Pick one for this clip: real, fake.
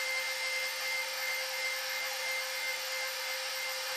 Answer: fake